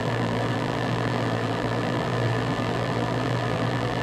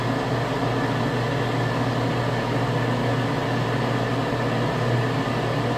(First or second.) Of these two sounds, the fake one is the first